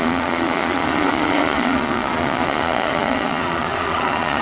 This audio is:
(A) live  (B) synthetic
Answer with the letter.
B